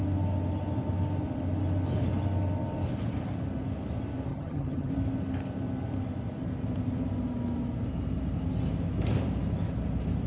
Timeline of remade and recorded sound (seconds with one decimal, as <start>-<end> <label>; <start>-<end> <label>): 0.0-4.3 recorded; 4.3-4.9 remade; 4.9-10.3 recorded